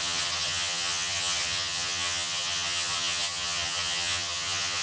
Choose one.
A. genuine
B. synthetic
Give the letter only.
B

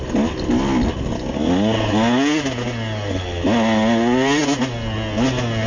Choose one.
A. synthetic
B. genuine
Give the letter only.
B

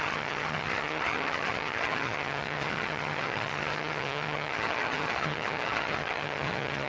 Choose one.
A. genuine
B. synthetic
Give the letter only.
B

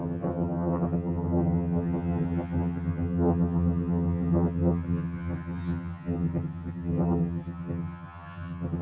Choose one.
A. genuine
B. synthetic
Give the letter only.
B